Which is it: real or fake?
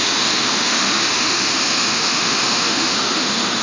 fake